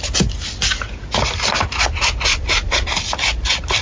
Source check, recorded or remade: recorded